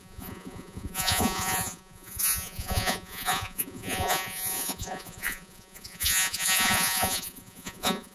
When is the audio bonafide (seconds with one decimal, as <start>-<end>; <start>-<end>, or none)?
none